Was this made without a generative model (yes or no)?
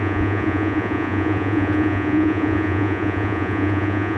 no